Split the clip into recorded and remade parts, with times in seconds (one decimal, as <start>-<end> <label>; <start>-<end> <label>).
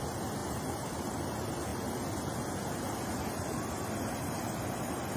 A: 0.0-5.2 recorded